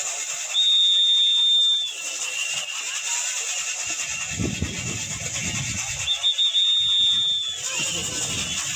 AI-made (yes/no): no